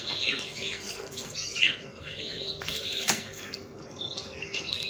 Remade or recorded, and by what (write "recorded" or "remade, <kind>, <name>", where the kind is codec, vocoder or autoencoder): remade, codec, SNAC